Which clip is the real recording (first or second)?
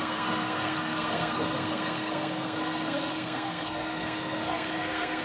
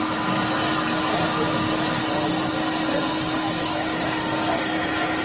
second